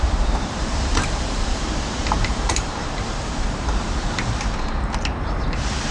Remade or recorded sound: remade